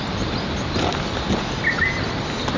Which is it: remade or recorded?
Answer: recorded